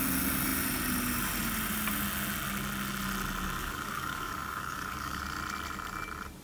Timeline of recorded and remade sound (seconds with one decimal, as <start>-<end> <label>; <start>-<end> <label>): 0.0-3.6 recorded; 3.6-5.2 remade; 5.2-6.4 recorded